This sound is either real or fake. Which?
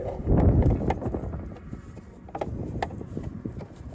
real